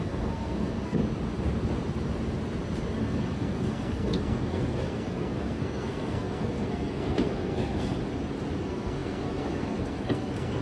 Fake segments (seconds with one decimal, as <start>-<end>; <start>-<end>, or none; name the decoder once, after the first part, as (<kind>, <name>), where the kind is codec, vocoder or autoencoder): 0.0-1.0 (codec, SNAC); 3.0-8.0; 8.6-10.6